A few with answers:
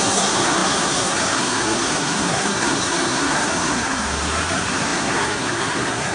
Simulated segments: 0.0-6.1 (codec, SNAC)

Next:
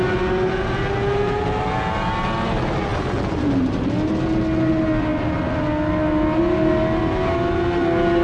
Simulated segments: none